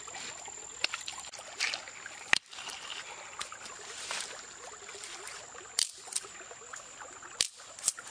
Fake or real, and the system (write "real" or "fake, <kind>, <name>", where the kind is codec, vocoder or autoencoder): real